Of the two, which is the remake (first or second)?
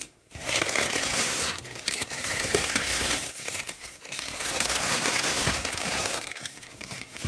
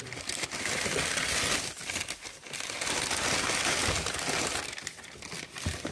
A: first